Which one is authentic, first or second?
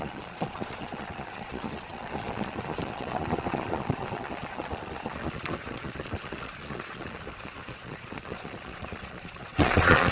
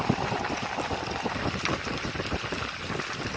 second